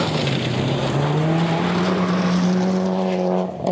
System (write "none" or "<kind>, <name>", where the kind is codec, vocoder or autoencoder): none